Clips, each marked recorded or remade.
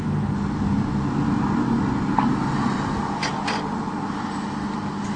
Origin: recorded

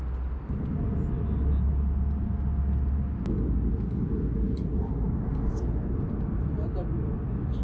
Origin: recorded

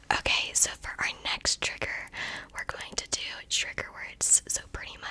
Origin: recorded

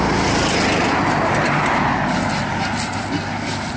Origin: recorded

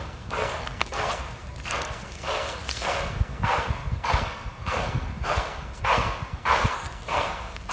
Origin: remade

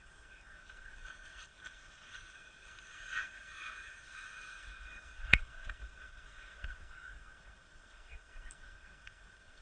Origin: remade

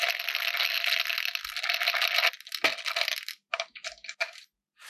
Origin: recorded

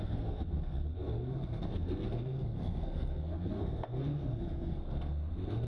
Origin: remade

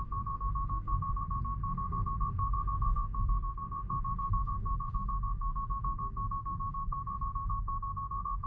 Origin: remade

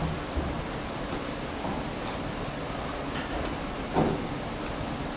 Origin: recorded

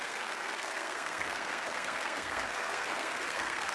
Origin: remade